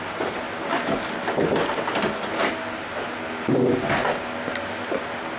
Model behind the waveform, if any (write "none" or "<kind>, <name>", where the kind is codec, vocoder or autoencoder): none